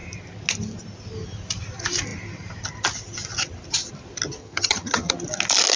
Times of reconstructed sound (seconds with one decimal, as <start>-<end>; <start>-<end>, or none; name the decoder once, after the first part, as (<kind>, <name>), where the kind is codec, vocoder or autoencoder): 4.4-5.1 (vocoder, HiFi-GAN)